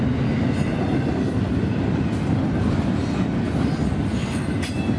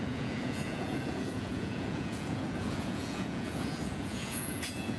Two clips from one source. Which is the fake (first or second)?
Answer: second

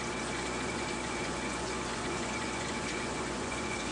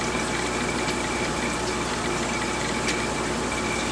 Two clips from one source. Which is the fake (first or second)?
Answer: first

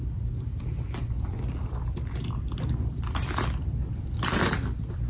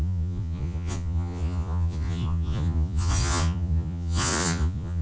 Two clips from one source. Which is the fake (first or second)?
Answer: second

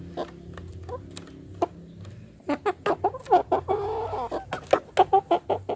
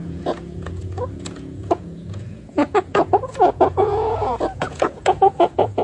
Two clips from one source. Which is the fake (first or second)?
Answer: second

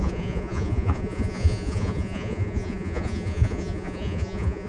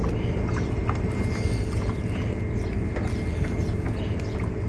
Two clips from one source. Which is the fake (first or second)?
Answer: first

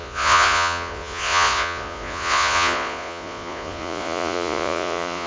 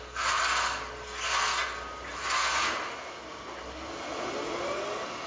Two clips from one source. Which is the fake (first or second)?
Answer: first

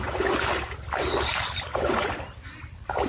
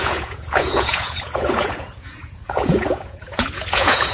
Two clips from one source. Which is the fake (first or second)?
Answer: second